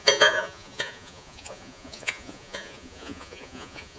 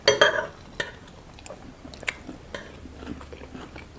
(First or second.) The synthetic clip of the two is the first